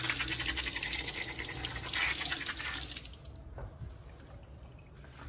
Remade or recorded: recorded